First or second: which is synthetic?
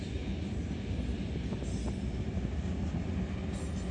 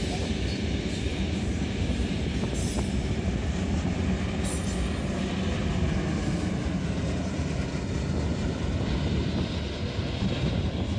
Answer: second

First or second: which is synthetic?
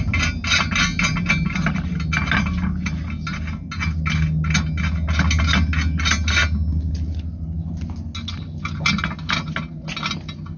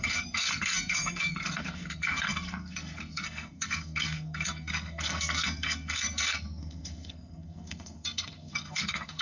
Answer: second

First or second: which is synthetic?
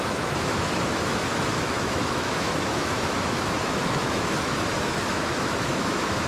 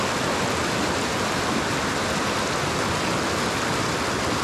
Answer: first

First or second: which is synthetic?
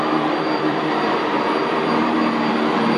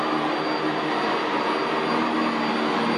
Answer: first